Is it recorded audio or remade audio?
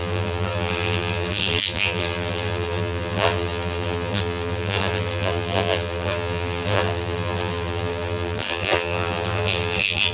remade